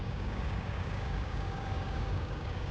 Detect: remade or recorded remade